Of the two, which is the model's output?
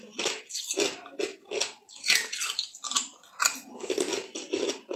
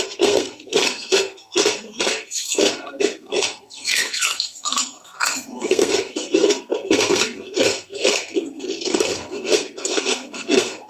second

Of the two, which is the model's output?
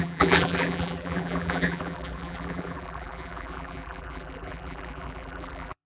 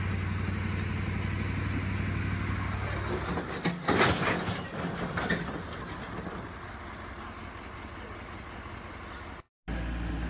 first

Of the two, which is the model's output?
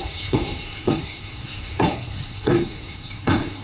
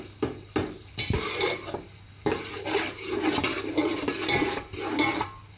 first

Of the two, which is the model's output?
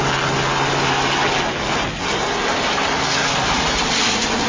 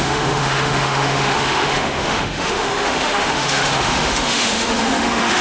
second